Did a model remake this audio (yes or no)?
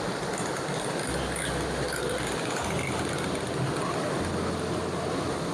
no